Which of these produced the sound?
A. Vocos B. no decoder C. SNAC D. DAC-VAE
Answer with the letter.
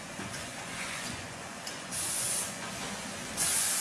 A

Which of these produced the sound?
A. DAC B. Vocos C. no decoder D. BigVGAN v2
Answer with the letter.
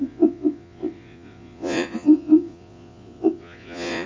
B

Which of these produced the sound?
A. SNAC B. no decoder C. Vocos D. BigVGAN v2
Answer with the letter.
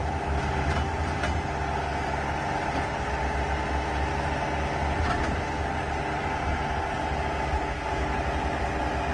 B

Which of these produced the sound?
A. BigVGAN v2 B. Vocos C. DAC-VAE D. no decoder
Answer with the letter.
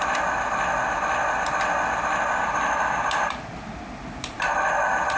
D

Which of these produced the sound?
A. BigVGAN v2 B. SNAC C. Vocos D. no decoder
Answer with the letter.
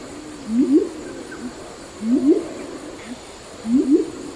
D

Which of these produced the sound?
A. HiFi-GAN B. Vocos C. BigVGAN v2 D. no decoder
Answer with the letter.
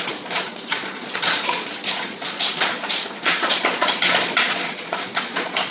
B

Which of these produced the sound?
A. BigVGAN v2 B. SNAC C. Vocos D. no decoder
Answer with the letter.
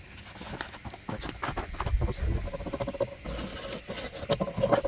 D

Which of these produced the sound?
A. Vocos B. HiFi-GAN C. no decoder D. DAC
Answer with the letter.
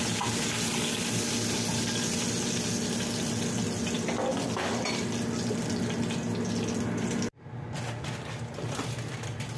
C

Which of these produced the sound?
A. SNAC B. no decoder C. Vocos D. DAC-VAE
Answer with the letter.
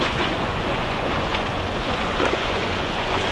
C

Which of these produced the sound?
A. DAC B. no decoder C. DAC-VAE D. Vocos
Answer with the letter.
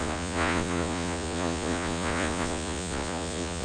D